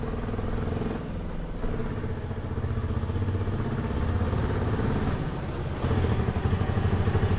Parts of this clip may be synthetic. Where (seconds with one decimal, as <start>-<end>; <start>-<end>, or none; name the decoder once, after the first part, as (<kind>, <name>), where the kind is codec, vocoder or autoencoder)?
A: 6.4-7.0 (vocoder, Vocos)